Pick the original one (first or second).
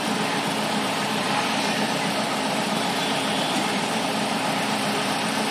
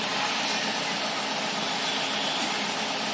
second